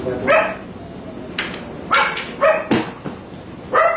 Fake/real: real